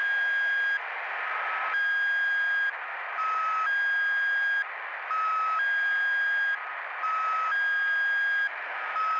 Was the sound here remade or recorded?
recorded